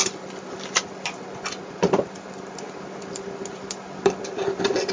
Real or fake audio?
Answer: real